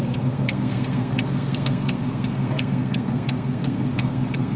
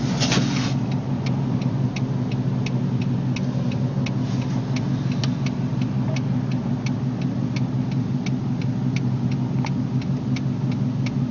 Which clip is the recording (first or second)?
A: second